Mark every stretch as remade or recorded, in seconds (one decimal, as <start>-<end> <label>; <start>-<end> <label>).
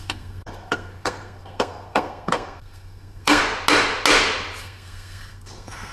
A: 0.0-3.4 remade; 3.4-4.6 recorded; 4.6-5.9 remade